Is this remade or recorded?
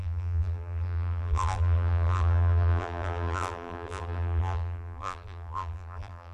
remade